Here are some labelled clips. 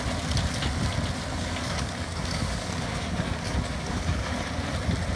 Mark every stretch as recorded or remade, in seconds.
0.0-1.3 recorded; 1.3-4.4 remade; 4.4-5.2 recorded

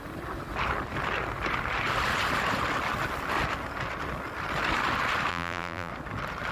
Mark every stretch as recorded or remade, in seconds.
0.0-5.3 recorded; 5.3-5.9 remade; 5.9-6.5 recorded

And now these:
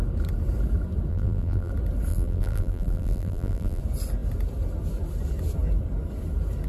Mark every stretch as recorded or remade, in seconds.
0.0-1.1 recorded; 1.1-1.7 remade; 1.7-2.1 recorded; 2.1-3.8 remade; 3.8-6.7 recorded

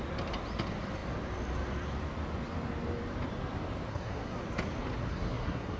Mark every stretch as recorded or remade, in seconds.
0.0-3.9 recorded; 3.9-4.4 remade; 4.4-5.1 recorded; 5.1-5.8 remade

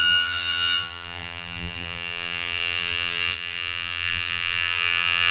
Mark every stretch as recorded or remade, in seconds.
0.0-5.3 remade

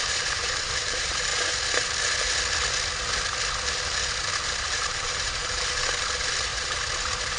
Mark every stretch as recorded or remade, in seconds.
0.0-1.3 remade; 1.3-4.4 recorded; 4.4-7.4 remade

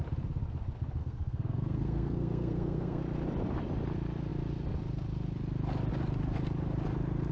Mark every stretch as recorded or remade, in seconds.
0.0-1.0 recorded; 1.0-3.0 remade; 3.0-7.3 recorded

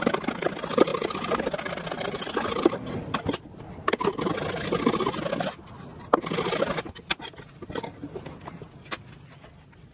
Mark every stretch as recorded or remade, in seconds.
0.0-9.9 recorded